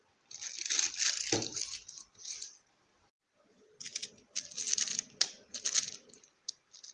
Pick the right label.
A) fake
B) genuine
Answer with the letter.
B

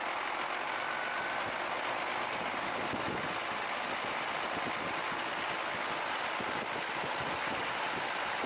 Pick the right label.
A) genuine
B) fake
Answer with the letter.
A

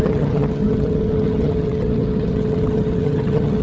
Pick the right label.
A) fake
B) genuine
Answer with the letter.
A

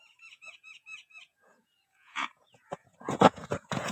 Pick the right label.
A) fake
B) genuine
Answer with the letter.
A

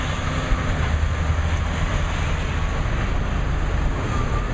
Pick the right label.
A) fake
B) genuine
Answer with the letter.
B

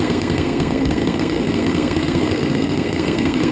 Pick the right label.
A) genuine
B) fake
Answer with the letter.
B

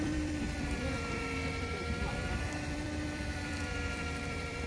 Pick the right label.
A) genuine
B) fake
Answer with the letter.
B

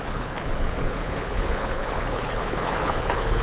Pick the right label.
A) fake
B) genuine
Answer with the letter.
A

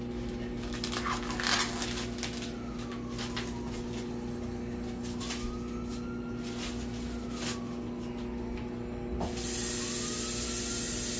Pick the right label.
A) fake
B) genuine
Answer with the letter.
B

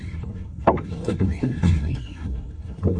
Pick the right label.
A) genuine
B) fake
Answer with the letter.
B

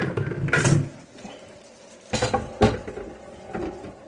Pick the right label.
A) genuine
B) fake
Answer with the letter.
A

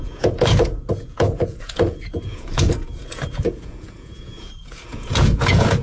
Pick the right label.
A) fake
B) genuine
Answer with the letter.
A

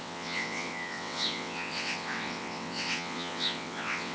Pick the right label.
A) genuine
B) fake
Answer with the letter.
B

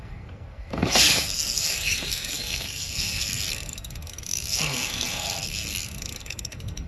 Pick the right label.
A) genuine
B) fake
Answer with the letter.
B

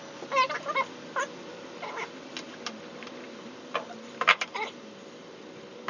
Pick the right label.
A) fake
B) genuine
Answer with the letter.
A